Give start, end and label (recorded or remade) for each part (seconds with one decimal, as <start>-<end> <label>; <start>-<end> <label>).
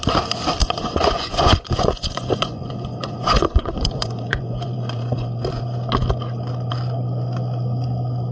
0.0-0.6 recorded; 0.6-5.6 remade; 5.6-8.3 recorded